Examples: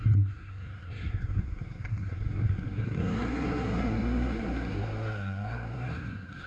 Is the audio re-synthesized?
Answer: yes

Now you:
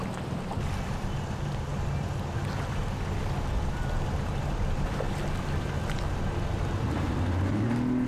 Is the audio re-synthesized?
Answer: no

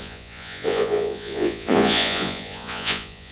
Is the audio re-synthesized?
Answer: yes